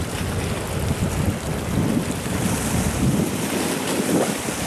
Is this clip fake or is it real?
real